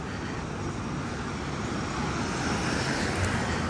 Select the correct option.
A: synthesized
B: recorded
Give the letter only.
B